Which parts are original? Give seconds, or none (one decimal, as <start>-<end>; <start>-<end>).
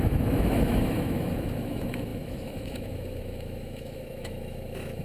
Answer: none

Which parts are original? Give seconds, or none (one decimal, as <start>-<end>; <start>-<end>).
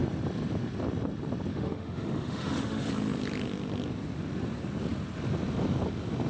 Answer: 0.0-1.5; 2.9-6.3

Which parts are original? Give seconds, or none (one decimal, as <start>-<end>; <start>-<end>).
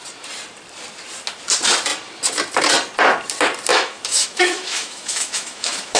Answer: 0.0-3.7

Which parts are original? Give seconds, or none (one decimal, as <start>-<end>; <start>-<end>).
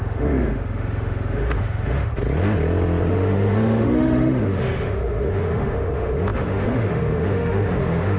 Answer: 2.1-3.1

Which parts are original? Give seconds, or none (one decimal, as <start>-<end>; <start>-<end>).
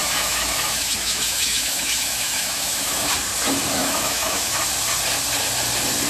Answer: 3.1-3.8; 4.6-6.1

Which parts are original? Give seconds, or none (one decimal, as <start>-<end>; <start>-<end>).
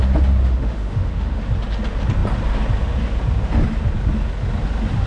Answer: 0.0-0.4; 1.4-5.1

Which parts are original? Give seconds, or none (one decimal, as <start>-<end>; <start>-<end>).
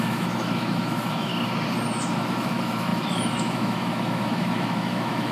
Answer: 1.3-1.9